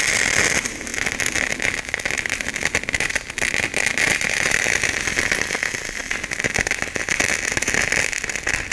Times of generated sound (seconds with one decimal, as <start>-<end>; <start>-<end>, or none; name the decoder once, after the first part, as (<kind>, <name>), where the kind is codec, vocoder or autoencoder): none